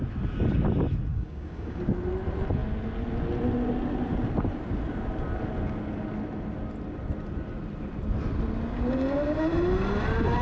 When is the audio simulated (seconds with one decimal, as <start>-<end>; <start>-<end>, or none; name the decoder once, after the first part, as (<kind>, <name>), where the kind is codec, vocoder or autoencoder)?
1.1-1.8 (codec, DAC)